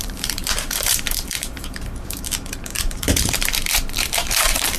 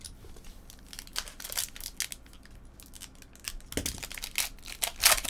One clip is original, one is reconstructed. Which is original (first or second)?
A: second